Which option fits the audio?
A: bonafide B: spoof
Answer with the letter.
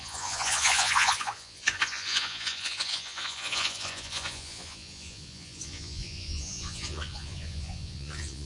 B